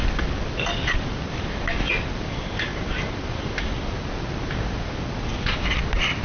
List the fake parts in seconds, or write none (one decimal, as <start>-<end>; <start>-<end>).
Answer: none